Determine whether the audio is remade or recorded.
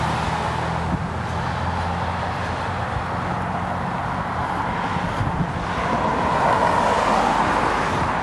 recorded